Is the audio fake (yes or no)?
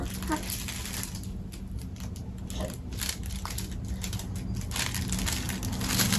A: no